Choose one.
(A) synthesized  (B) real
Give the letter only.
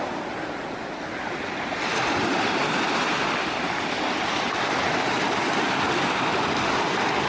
B